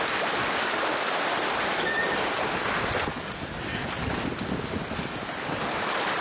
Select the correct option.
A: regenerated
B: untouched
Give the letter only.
B